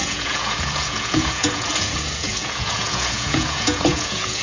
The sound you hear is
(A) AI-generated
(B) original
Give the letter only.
A